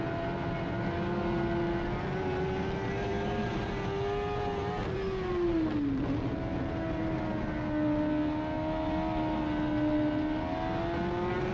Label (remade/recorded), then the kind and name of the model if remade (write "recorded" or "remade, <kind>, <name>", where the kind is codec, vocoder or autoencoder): recorded